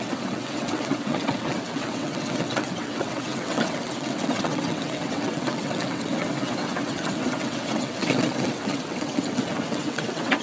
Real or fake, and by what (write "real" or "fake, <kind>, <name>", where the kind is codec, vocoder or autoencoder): fake, vocoder, WaveNeXt